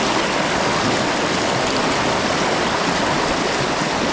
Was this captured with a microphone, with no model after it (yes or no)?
yes